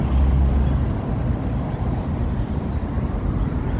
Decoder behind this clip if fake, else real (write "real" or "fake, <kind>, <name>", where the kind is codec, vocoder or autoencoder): real